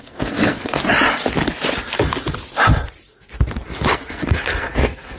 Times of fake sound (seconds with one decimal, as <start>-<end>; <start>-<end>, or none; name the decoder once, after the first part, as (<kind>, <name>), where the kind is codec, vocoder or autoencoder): 0.0-0.8 (codec, SNAC); 3.9-5.2